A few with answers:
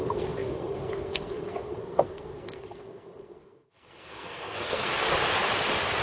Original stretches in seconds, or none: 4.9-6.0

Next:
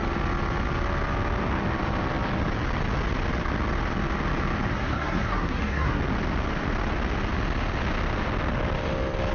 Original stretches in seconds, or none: 0.0-4.7; 6.0-9.3

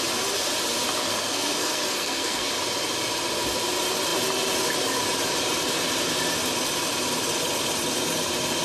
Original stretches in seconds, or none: 0.0-1.0; 2.5-8.6

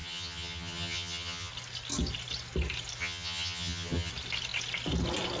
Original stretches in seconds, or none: 1.5-3.0; 4.1-5.4